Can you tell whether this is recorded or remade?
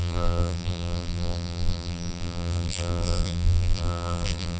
remade